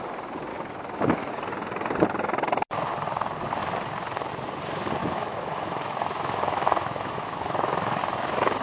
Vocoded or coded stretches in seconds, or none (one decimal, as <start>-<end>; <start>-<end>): 0.5-1.3; 5.0-8.0